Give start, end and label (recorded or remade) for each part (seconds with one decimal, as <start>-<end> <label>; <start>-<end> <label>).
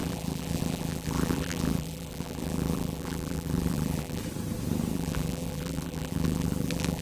0.0-4.2 remade; 4.2-4.9 recorded; 4.9-7.0 remade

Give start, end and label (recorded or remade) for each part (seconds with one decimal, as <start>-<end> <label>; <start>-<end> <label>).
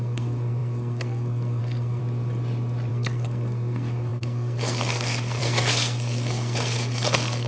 0.0-2.0 remade; 2.0-2.9 recorded; 2.9-7.5 remade